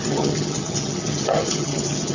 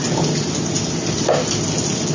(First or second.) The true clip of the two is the second